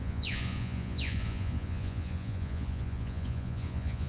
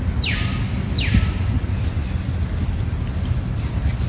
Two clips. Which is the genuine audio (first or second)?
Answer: second